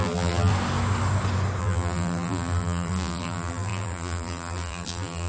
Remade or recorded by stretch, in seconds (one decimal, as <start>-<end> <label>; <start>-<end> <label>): 0.0-0.5 remade; 0.5-1.6 recorded; 1.6-5.3 remade